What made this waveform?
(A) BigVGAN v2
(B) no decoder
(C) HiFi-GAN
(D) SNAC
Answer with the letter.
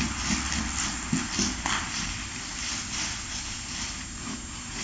B